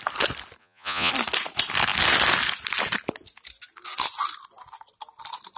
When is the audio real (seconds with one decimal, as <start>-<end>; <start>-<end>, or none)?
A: 0.0-0.6; 1.1-5.6

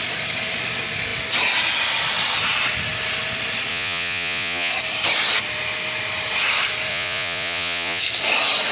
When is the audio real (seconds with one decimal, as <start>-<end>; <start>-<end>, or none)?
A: 0.0-3.7; 4.7-6.9; 8.0-8.7

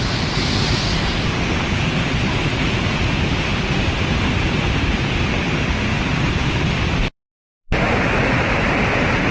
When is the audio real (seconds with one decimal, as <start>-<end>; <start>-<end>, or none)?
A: 0.0-2.5; 3.1-9.3

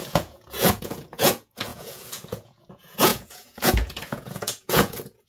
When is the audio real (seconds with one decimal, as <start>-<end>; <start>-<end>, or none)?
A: none

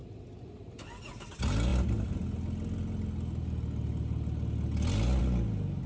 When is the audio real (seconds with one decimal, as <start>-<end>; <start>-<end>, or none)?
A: 0.0-5.9

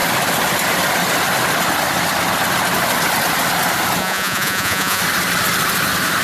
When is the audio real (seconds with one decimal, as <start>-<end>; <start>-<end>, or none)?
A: 0.0-4.0; 5.0-6.2

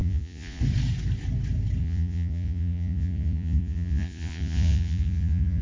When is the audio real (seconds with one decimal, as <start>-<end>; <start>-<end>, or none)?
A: 0.6-1.8